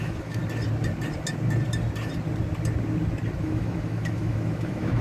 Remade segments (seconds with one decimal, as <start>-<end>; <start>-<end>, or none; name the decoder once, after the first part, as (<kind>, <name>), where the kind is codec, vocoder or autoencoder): 0.0-0.4 (autoencoder, DAC-VAE); 3.4-5.0